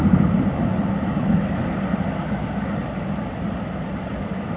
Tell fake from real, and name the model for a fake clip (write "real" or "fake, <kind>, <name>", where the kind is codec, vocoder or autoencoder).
real